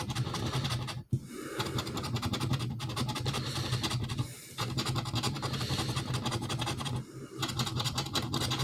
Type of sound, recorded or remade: recorded